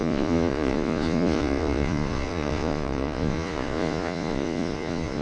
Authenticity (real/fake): fake